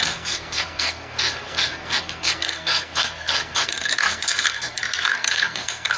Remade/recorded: remade